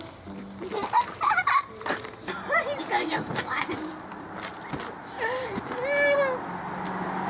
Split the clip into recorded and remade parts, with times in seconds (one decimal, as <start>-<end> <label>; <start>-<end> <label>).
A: 0.0-0.8 recorded; 0.8-4.7 remade; 4.7-7.3 recorded